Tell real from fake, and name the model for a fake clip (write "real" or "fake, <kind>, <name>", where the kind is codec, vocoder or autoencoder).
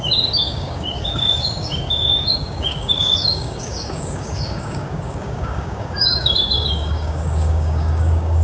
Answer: fake, codec, DAC